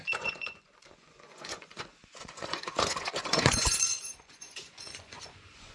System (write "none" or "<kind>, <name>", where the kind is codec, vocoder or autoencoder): vocoder, Vocos